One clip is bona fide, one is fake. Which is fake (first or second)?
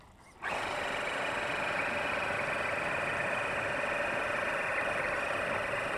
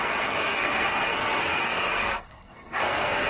second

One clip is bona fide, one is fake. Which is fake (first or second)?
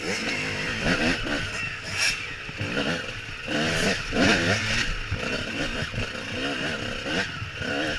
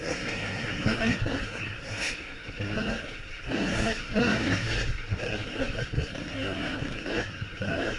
second